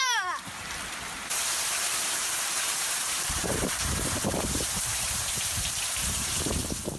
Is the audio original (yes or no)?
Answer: no